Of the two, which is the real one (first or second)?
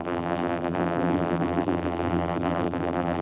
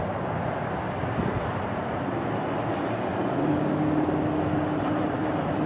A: second